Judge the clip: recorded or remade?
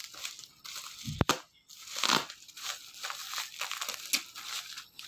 recorded